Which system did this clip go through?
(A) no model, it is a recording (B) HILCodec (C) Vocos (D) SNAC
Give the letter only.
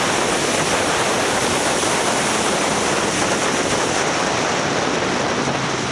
A